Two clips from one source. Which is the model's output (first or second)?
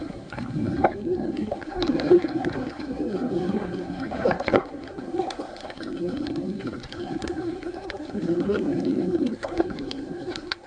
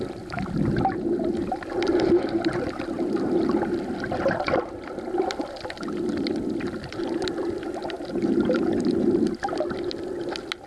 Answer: first